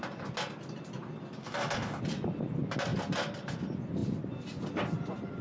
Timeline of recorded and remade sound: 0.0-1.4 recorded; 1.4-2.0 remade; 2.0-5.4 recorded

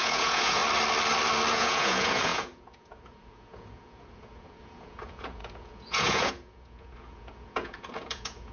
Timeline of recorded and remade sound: 0.0-0.6 remade; 0.6-1.5 recorded; 1.5-8.5 remade

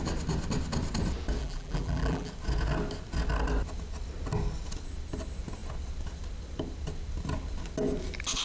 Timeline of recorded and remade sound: 0.0-1.4 recorded; 1.4-2.3 remade; 2.3-8.4 recorded

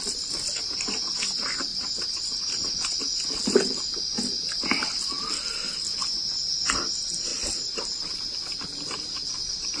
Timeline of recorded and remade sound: 0.0-9.8 recorded